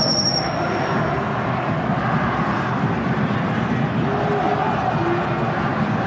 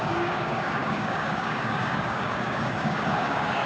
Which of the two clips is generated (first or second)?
second